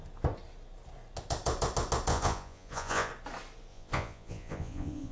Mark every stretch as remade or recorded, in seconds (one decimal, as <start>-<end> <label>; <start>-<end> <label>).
0.0-2.1 recorded; 2.1-3.1 remade; 3.1-3.7 recorded; 3.7-5.1 remade